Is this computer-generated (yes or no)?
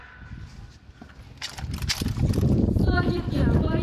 no